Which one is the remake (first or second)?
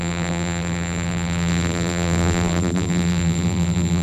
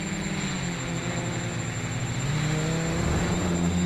first